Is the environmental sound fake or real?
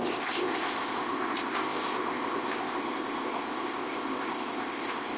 fake